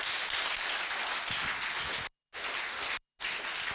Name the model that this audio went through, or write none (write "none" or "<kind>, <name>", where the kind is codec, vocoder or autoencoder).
none